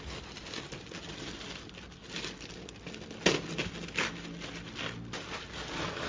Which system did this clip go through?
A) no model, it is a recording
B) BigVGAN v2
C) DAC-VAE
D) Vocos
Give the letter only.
A